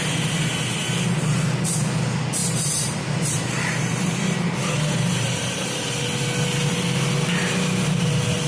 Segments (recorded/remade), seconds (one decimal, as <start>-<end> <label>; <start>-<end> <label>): 0.0-2.4 recorded; 2.4-6.0 remade; 6.0-8.5 recorded